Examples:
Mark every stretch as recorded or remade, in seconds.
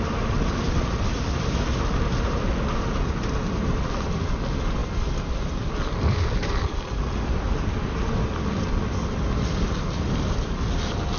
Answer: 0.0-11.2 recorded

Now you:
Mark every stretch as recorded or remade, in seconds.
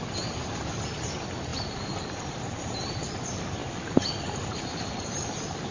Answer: 0.0-1.5 recorded; 1.5-3.1 remade; 3.1-3.6 recorded; 3.6-5.7 remade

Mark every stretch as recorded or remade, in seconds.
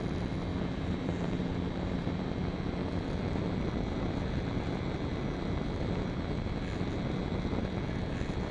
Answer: 0.0-0.5 recorded; 0.5-2.3 remade; 2.3-8.5 recorded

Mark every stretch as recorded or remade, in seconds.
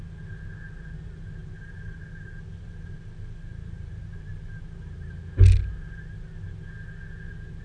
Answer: 0.0-1.4 recorded; 1.4-5.1 remade; 5.1-7.6 recorded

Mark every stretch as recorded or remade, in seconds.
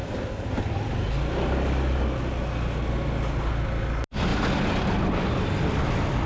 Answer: 0.0-4.3 recorded; 4.3-5.0 remade; 5.0-6.3 recorded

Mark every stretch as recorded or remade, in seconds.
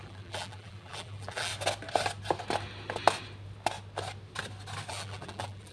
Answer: 0.0-1.5 remade; 1.5-4.9 recorded; 4.9-5.7 remade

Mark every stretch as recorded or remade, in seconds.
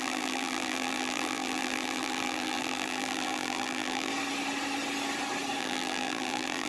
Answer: 0.0-4.1 remade; 4.1-5.6 recorded; 5.6-6.7 remade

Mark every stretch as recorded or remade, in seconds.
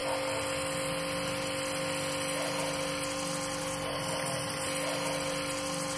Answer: 0.0-6.0 recorded